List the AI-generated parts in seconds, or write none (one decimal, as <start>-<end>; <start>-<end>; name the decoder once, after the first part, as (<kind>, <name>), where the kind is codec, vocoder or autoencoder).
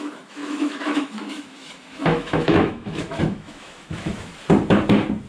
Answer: 0.0-4.3 (autoencoder, DAC-VAE)